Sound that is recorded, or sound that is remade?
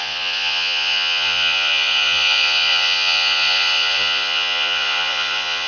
remade